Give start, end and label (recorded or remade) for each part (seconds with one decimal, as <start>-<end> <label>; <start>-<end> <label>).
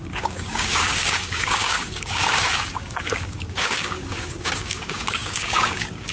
0.0-6.1 remade